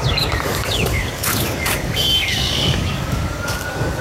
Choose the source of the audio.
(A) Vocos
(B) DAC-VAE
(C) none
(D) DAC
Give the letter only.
D